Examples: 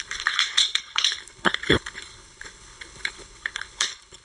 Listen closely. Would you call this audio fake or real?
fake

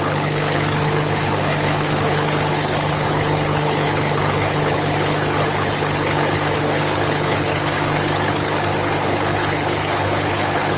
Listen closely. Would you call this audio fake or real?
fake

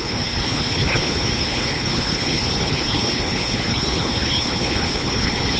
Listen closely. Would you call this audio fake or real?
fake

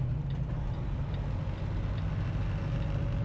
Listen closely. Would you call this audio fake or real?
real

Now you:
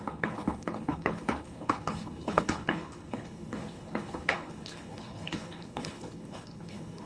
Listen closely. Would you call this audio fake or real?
fake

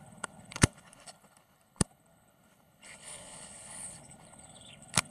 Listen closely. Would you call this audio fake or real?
fake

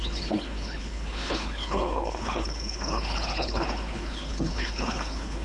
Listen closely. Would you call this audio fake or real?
fake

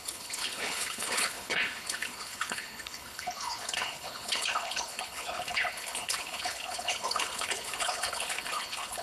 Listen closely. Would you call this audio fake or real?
fake